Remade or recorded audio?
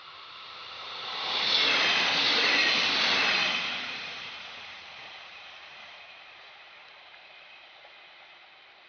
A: remade